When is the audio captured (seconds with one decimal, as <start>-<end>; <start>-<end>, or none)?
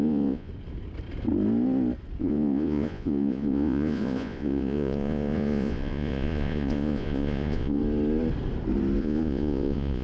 0.5-2.2; 7.8-9.0